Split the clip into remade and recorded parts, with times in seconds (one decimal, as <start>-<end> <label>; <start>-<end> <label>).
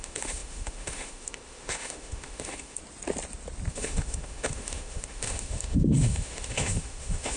0.0-2.8 remade; 2.8-3.7 recorded; 3.7-7.4 remade